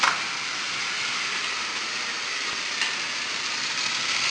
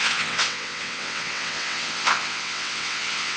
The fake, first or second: second